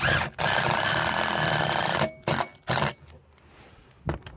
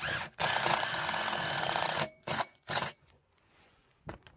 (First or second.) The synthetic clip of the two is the second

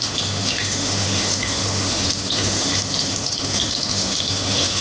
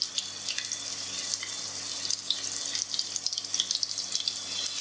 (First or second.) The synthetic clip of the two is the first